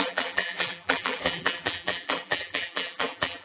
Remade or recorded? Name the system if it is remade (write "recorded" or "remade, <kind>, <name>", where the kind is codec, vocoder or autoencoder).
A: remade, vocoder, BigVGAN v2